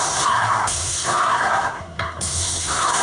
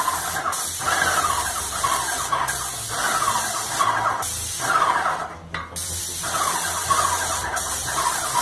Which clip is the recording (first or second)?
second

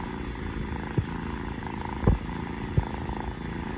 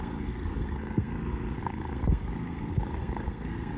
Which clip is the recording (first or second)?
first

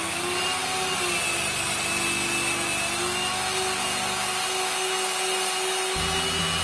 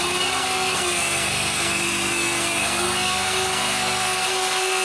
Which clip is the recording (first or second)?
first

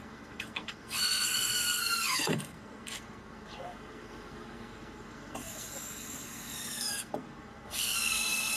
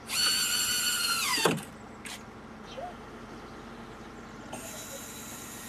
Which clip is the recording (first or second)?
second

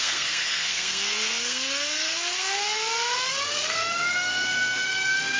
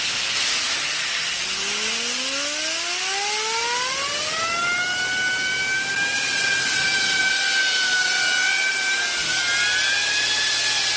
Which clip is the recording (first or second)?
second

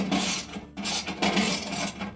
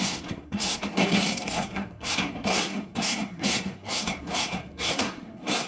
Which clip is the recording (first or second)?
first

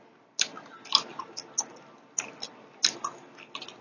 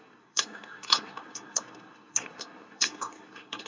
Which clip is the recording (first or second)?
first